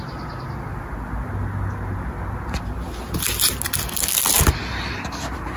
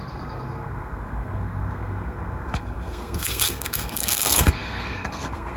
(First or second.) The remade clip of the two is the second